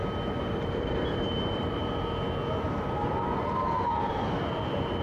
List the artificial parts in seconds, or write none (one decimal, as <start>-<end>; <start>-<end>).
0.8-1.8; 4.1-5.0